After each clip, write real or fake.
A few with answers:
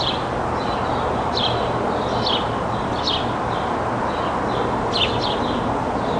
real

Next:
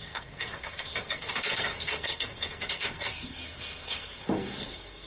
fake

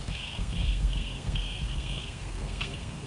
fake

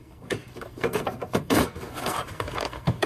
fake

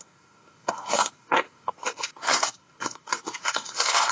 fake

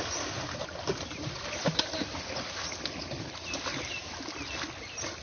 real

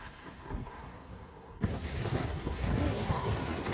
fake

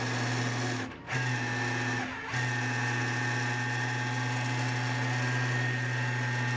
real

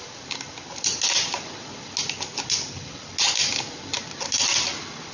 real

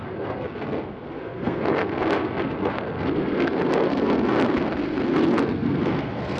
fake